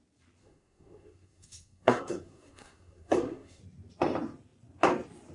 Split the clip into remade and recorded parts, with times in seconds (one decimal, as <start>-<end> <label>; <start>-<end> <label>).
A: 0.0-0.4 recorded; 0.4-3.6 remade; 3.6-5.3 recorded